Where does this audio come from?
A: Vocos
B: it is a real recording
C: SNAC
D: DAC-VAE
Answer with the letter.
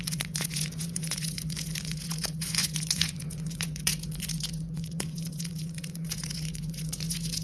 A